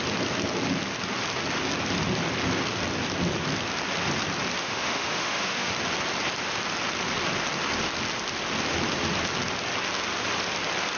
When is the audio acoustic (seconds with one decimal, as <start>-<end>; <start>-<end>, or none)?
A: 0.0-4.6; 5.7-11.0